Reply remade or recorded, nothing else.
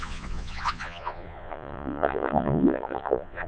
remade